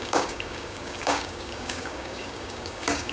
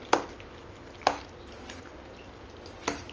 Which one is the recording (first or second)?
second